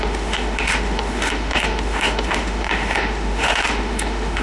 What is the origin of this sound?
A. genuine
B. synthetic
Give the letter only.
B